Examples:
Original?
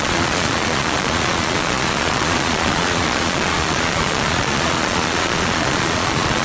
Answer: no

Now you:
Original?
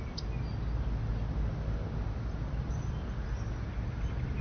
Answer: yes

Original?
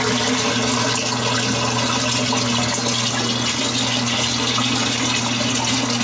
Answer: yes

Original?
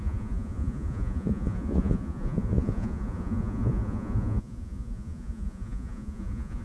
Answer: no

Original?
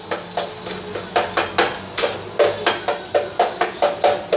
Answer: yes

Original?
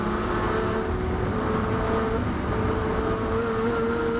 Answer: yes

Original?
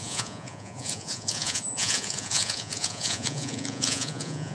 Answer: no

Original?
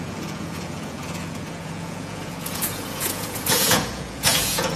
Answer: no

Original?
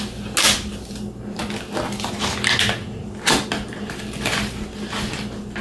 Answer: yes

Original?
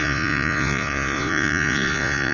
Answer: no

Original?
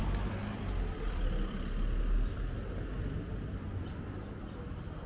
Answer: yes